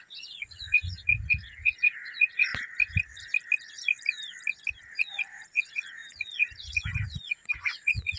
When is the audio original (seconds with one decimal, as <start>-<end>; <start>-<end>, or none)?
2.5-4.8